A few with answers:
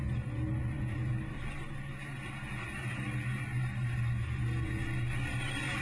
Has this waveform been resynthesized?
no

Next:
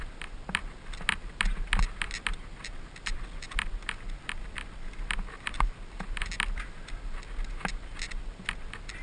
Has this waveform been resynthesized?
no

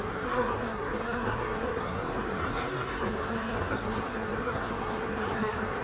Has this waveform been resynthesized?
yes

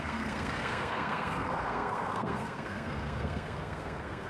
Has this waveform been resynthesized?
yes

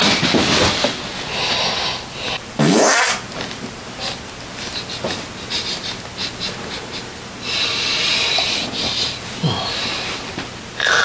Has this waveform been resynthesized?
no